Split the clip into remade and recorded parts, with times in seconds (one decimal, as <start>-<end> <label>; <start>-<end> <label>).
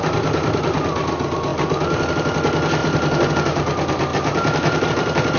0.0-2.8 recorded; 2.8-3.3 remade; 3.3-4.1 recorded; 4.1-4.9 remade; 4.9-5.4 recorded